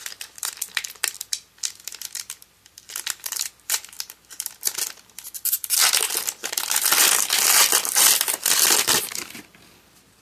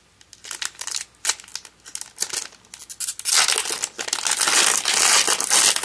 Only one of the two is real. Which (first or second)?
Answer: second